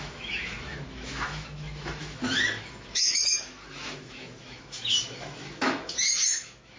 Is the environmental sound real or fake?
fake